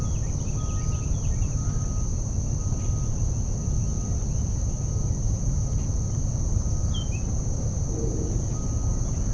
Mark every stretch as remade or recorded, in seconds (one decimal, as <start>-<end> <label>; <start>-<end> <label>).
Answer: 0.0-9.3 recorded